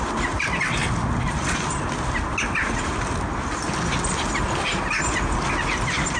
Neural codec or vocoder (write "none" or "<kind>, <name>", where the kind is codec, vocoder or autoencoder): none